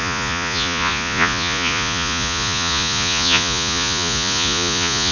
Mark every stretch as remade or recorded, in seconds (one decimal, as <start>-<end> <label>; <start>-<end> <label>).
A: 0.0-5.1 remade